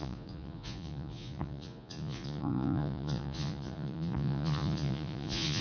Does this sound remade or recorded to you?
remade